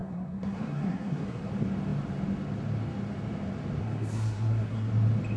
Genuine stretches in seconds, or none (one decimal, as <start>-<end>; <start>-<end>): 1.5-3.8; 4.9-5.4